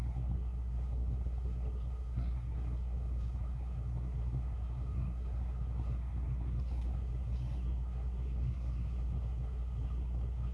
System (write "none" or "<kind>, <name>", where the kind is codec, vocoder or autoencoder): codec, SNAC